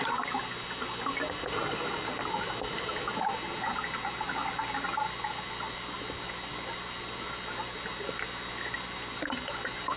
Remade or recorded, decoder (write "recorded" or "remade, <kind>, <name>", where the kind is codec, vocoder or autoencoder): recorded